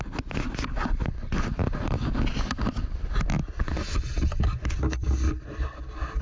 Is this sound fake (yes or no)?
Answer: no